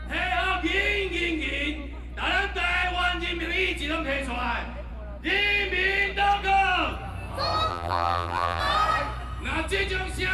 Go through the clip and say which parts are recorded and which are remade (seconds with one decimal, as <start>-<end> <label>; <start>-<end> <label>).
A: 0.0-7.7 recorded; 7.7-8.6 remade; 8.6-10.3 recorded